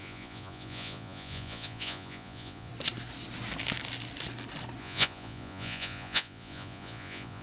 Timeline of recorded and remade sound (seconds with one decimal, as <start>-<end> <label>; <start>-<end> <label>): 0.0-2.7 remade; 2.7-4.8 recorded; 4.8-7.4 remade